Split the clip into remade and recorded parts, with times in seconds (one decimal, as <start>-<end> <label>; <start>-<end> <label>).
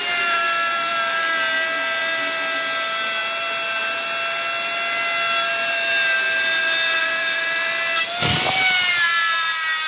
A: 0.0-9.9 recorded